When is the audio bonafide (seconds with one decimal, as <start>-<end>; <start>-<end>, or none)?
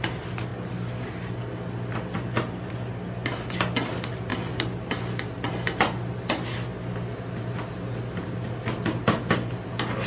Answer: 0.0-10.1